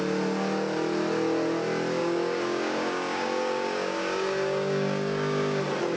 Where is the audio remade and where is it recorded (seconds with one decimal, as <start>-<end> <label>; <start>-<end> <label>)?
0.0-2.0 recorded; 2.0-5.6 remade; 5.6-6.0 recorded